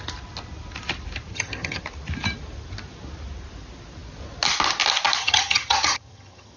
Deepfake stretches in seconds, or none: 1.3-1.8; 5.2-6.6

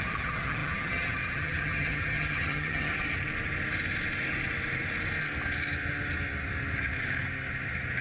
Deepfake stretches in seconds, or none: 0.0-2.9